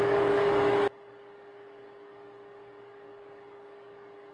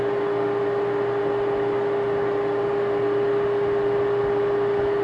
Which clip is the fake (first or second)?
first